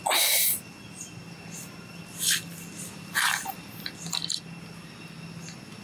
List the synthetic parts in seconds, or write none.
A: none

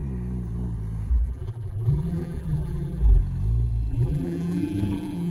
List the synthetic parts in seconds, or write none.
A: 1.1-3.2; 3.9-5.3

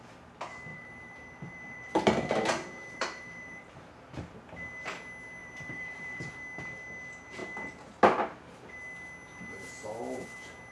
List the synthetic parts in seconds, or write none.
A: 0.7-3.7; 5.4-6.3

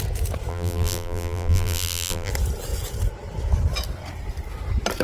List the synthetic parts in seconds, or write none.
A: 0.5-2.3